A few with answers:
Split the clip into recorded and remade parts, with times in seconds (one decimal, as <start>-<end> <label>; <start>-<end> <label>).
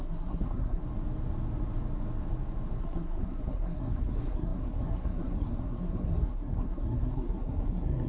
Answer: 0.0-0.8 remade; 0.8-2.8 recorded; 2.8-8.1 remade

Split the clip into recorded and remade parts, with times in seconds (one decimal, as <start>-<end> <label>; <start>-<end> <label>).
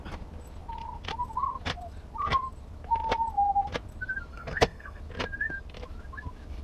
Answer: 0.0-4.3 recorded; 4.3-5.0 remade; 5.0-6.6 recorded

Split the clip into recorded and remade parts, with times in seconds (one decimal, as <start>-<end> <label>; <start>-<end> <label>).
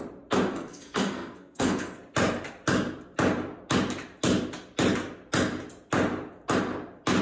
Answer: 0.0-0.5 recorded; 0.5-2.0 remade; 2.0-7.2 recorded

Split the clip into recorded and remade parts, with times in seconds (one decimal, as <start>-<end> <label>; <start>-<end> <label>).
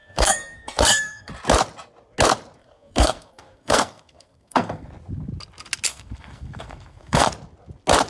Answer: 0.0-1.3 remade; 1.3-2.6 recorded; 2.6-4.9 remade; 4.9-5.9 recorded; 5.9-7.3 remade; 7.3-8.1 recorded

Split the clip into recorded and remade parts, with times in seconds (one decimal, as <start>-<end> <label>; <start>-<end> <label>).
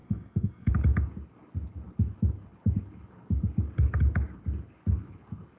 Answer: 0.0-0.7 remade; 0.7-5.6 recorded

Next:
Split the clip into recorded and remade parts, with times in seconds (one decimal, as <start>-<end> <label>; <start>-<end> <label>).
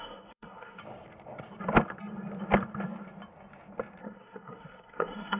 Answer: 0.0-0.8 remade; 0.8-4.0 recorded; 4.0-5.4 remade